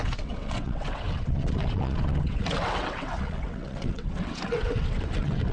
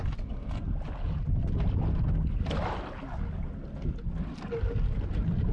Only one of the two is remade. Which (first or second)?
first